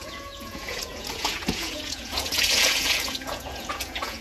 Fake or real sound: fake